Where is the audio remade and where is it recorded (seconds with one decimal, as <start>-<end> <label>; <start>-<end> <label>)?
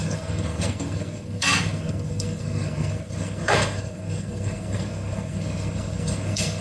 0.0-6.6 remade